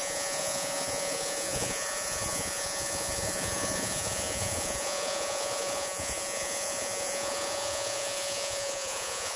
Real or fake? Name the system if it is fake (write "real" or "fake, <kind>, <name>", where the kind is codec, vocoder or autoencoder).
fake, vocoder, Vocos